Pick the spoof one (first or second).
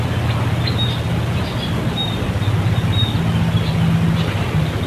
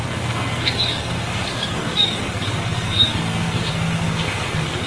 second